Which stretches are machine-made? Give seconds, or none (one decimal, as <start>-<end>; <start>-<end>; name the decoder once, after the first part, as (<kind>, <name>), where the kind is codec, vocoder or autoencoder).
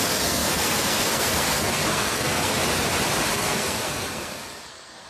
0.0-2.6 (codec, SNAC); 3.3-5.1